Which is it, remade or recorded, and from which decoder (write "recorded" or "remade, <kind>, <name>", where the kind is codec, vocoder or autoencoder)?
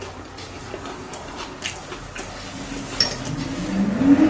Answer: recorded